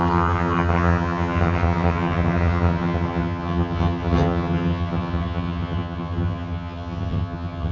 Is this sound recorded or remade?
remade